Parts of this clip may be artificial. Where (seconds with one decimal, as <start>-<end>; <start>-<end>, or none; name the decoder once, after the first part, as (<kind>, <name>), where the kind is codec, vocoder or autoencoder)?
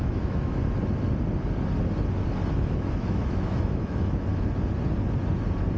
0.0-0.6 (autoencoder, DAC-VAE); 2.5-4.3